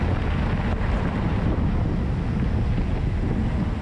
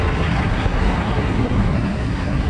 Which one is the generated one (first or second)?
second